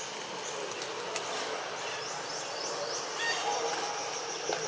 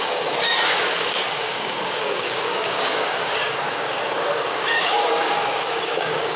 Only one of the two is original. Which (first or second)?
first